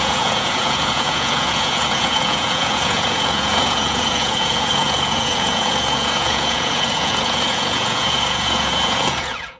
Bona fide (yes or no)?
no